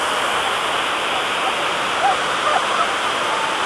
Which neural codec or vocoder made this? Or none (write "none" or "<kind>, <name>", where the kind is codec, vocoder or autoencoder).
none